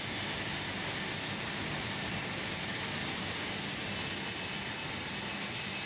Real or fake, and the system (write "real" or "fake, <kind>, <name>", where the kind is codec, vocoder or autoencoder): real